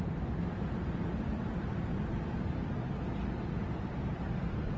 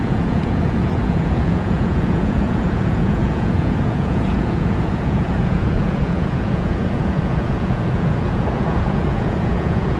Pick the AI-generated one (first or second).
second